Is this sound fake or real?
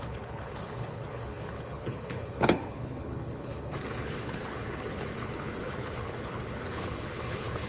fake